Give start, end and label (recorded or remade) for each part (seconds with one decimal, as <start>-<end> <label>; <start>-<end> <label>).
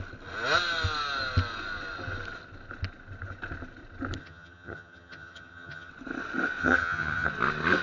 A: 0.0-4.2 recorded; 4.2-5.9 remade; 5.9-6.6 recorded; 6.6-7.3 remade; 7.3-7.8 recorded